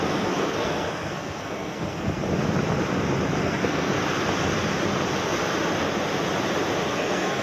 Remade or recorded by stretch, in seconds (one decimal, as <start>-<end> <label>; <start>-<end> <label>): 0.0-2.2 remade; 2.2-3.4 recorded; 3.4-4.0 remade; 4.0-6.9 recorded; 6.9-7.4 remade